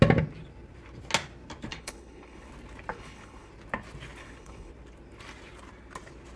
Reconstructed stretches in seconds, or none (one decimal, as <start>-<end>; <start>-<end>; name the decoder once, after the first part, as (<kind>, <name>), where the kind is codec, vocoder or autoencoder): 1.7-2.5 (codec, HILCodec); 2.9-3.5; 4.2-4.7